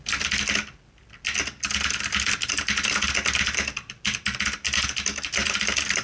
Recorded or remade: recorded